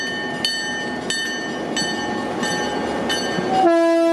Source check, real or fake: real